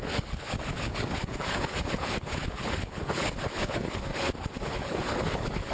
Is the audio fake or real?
fake